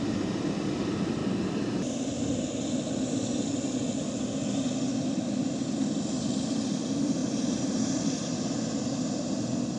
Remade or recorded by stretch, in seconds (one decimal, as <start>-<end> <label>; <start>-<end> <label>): 0.0-1.2 remade; 1.2-5.0 recorded; 5.0-7.2 remade; 7.2-8.7 recorded; 8.7-9.8 remade

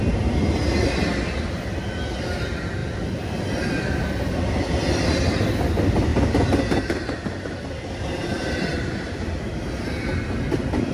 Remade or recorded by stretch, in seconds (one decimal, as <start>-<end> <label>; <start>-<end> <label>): 0.0-6.1 recorded; 6.1-7.1 remade; 7.1-10.9 recorded

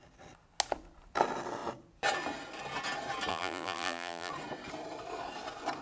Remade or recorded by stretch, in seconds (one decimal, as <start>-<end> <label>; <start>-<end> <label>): 0.0-3.3 recorded; 3.3-4.3 remade; 4.3-5.8 recorded

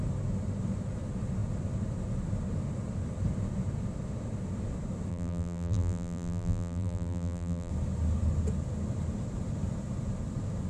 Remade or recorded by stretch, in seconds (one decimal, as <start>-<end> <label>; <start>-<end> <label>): 0.0-5.1 recorded; 5.1-7.7 remade; 7.7-10.7 recorded

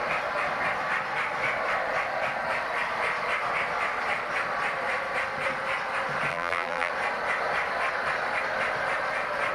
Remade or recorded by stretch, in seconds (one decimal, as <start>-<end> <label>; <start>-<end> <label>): 0.0-6.3 recorded; 6.3-6.9 remade; 6.9-9.5 recorded

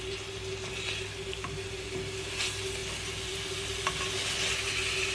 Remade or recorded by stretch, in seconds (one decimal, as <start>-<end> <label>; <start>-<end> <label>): 0.0-5.1 recorded

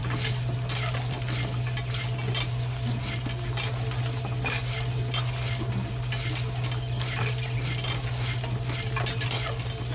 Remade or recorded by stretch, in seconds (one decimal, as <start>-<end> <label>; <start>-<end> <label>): 0.0-9.9 recorded

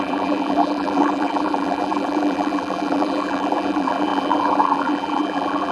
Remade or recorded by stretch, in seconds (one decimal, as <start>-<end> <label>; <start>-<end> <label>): 0.0-5.7 remade